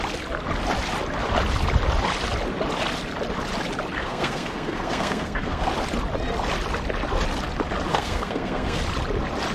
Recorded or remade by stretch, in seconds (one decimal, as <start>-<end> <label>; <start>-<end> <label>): 0.0-4.0 recorded; 4.0-5.7 remade; 5.7-7.9 recorded; 7.9-8.8 remade; 8.8-9.5 recorded